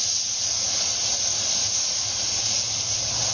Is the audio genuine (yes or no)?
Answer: yes